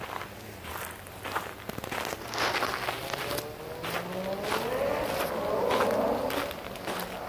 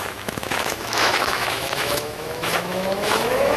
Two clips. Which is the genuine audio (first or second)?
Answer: first